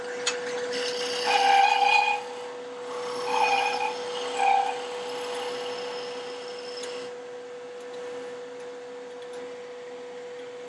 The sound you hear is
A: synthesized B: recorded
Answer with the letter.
B